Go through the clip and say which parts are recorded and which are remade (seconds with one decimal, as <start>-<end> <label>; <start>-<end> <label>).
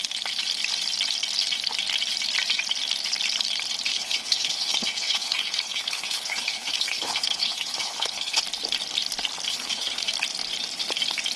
0.0-3.9 recorded; 3.9-8.4 remade; 8.4-9.5 recorded; 9.5-10.1 remade; 10.1-11.4 recorded